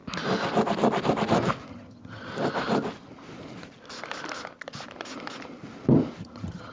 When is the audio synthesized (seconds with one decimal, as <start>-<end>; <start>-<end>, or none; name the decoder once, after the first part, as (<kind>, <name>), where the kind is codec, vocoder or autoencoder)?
1.7-2.3 (vocoder, HiFi-GAN); 6.2-6.7